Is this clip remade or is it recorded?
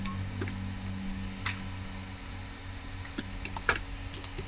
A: recorded